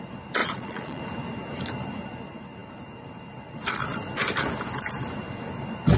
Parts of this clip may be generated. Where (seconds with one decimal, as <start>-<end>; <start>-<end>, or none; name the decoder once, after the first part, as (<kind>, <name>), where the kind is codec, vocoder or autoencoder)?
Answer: 0.4-1.0 (vocoder, Vocos)